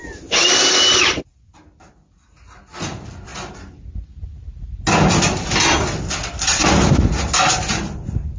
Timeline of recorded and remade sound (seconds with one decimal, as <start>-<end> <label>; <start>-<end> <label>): 0.0-8.4 recorded